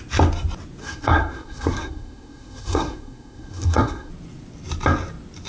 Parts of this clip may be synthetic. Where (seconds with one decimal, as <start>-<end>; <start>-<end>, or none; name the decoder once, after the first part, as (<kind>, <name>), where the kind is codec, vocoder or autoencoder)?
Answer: 0.8-4.1 (codec, SNAC)